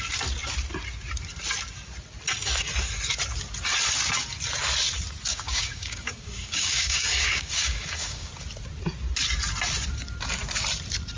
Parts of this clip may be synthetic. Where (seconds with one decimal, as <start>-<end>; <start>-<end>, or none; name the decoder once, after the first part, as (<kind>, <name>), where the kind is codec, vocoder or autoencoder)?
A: 5.3-8.3 (codec, DAC)